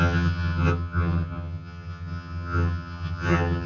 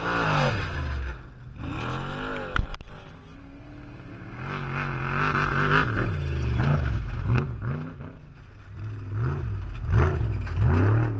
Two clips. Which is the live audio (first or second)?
second